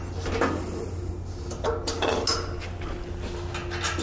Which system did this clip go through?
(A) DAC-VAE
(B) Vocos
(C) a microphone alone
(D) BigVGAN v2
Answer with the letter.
C